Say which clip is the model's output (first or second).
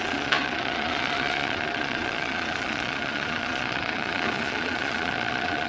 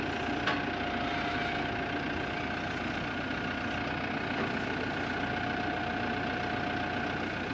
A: first